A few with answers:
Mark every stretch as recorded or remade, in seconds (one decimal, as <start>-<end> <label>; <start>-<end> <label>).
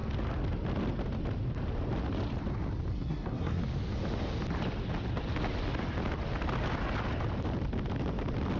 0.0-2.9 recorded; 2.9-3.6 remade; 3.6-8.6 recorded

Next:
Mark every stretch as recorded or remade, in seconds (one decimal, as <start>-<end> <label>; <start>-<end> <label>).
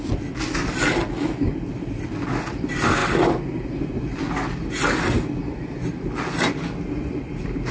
0.0-7.7 recorded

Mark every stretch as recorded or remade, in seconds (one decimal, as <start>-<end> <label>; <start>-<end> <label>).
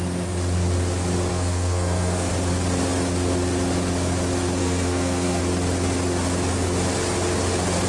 0.0-1.3 recorded; 1.3-2.3 remade; 2.3-4.6 recorded; 4.6-5.4 remade; 5.4-7.9 recorded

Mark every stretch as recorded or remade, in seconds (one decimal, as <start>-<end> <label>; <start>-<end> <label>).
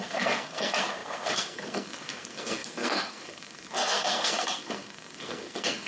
0.0-5.9 remade